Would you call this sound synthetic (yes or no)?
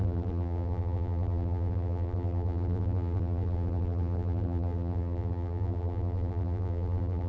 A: yes